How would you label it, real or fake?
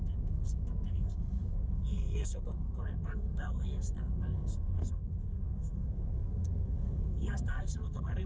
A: fake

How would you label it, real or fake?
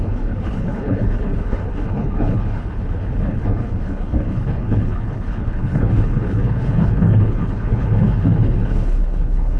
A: fake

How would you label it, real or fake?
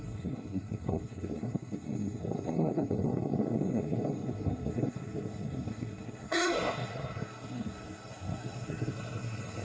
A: fake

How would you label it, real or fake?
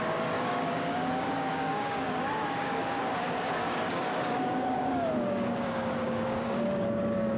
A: fake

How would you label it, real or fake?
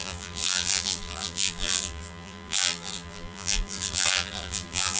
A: fake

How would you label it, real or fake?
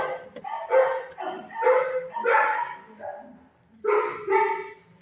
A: real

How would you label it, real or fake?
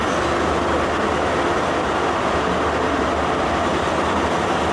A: real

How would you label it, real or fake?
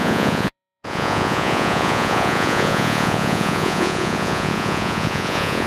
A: fake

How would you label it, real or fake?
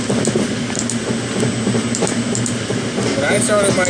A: real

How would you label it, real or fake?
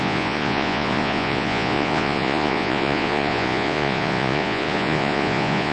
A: fake